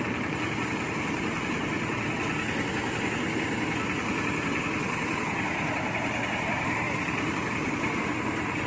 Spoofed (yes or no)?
no